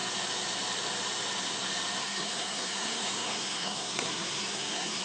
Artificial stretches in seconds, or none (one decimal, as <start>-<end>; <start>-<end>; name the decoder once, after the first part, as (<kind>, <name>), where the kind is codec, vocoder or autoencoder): 2.0-5.0 (codec, SNAC)